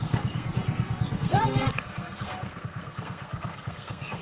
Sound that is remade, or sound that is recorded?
remade